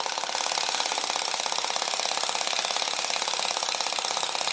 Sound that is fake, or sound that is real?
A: real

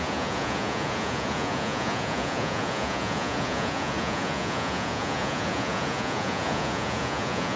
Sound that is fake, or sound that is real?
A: fake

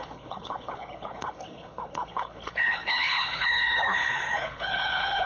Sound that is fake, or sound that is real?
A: fake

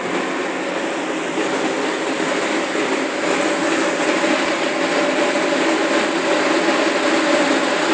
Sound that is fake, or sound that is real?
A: real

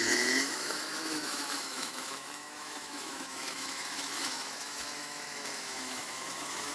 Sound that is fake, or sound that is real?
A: fake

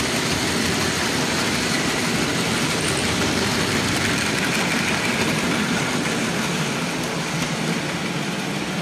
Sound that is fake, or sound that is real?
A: real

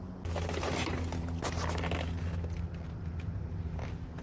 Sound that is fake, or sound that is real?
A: real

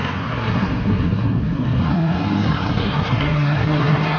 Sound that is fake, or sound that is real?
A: fake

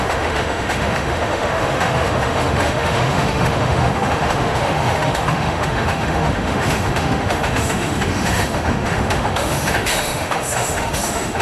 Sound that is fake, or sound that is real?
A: fake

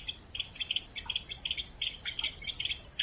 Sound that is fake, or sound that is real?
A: real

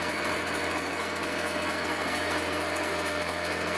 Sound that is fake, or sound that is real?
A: fake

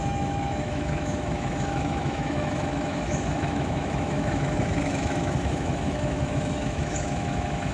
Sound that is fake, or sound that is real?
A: fake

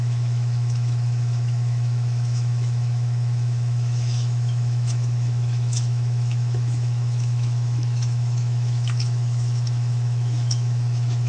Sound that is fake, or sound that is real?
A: fake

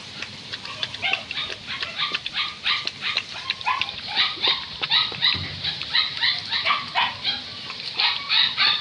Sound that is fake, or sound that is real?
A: fake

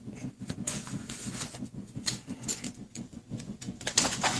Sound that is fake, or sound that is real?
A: fake